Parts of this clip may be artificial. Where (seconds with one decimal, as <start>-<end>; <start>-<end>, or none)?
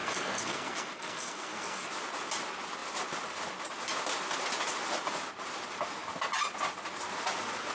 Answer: 0.0-1.9